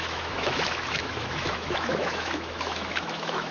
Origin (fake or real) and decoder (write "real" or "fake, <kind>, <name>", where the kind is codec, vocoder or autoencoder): fake, autoencoder, DAC-VAE